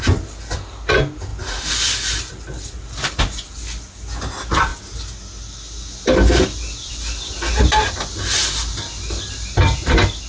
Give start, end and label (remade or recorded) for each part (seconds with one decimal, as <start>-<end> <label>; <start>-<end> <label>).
0.0-10.3 recorded